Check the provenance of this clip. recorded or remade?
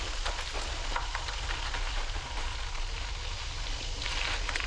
recorded